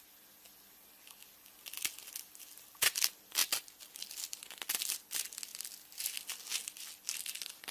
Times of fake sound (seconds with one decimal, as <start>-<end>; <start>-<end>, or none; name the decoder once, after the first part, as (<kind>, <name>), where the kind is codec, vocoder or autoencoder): none